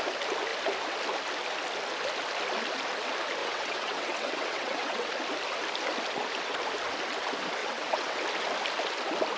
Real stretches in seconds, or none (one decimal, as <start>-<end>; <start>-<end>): 0.0-3.4; 5.1-7.6; 8.2-9.4